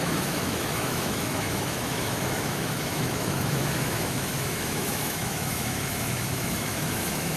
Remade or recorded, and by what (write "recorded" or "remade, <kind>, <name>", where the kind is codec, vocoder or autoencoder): remade, autoencoder, DAC-VAE